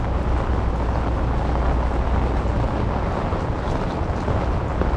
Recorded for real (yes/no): yes